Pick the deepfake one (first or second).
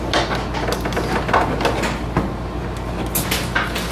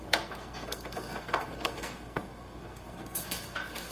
second